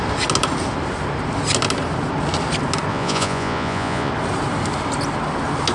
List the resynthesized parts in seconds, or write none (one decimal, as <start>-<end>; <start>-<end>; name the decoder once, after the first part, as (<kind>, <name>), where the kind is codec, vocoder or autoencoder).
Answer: 2.9-4.1 (vocoder, Vocos)